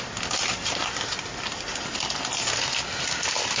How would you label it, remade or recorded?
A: recorded